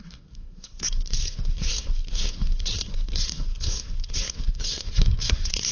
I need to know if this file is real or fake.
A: fake